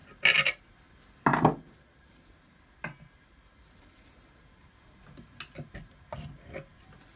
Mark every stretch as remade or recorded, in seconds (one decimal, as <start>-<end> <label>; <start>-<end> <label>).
0.0-7.2 recorded

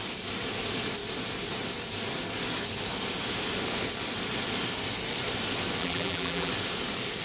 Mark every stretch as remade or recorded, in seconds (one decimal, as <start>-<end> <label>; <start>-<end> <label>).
0.0-5.8 recorded; 5.8-6.5 remade; 6.5-7.2 recorded